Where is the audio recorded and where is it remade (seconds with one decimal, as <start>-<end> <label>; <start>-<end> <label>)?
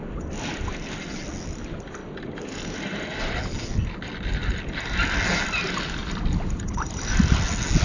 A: 0.0-7.8 recorded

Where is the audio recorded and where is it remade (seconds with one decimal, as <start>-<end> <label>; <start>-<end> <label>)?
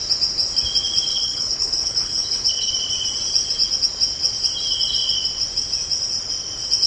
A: 0.0-1.1 recorded; 1.1-2.7 remade; 2.7-6.9 recorded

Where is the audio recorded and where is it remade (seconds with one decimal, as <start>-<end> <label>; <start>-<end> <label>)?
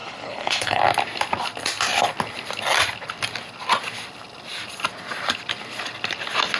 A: 0.0-0.8 remade; 0.8-6.6 recorded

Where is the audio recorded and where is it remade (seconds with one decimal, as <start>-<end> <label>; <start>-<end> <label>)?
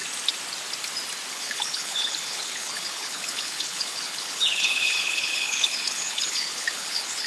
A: 0.0-1.3 recorded; 1.3-7.3 remade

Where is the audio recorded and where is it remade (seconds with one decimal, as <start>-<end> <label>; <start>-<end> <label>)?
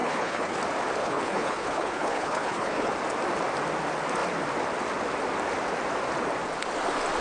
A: 0.0-0.6 remade; 0.6-1.0 recorded; 1.0-2.9 remade; 2.9-7.2 recorded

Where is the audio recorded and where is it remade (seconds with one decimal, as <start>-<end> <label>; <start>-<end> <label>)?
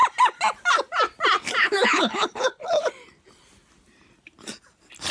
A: 0.0-1.6 recorded; 1.6-2.9 remade; 2.9-5.1 recorded